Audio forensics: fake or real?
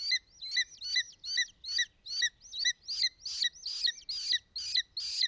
real